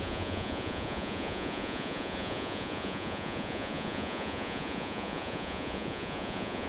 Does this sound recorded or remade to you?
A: remade